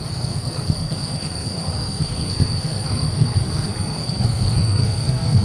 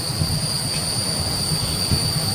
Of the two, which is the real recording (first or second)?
second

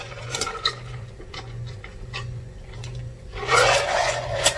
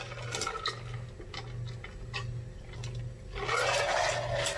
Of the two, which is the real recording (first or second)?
second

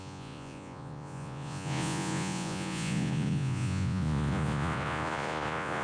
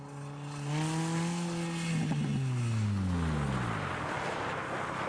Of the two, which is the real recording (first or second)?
second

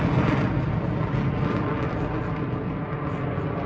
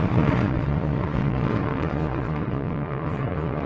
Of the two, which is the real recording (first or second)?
first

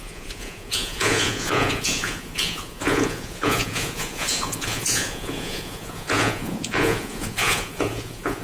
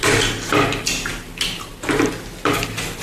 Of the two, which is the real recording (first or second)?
second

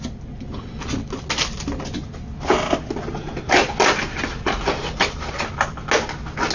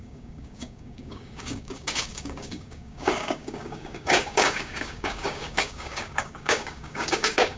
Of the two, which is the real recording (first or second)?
first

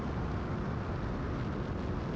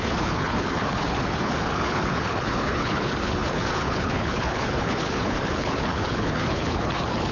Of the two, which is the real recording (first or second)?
first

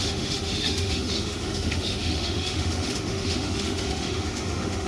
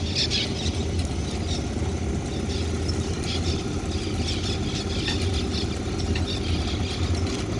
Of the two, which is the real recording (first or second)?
second